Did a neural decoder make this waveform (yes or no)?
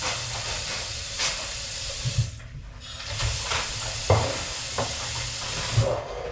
no